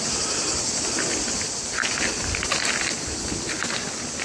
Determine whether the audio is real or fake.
real